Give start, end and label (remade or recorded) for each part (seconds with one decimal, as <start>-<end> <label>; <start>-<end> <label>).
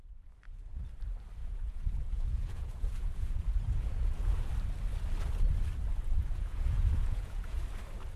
0.0-1.4 recorded; 1.4-4.5 remade; 4.5-6.2 recorded; 6.2-7.6 remade; 7.6-8.2 recorded